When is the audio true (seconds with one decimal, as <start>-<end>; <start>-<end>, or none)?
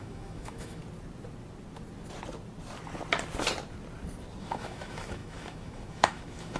0.8-4.4